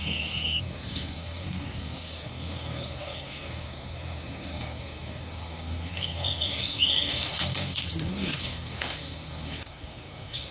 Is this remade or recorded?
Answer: remade